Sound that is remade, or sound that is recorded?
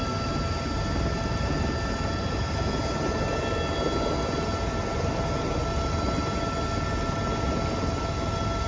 recorded